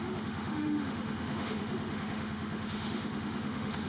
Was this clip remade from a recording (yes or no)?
yes